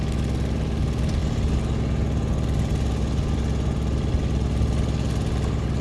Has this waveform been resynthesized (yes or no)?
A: no